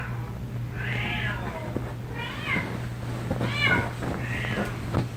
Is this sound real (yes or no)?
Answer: yes